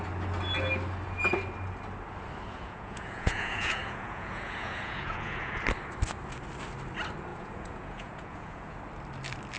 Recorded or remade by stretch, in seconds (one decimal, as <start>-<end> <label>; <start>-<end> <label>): 0.0-2.5 recorded; 2.5-5.6 remade; 5.6-7.3 recorded; 7.3-8.8 remade; 8.8-9.6 recorded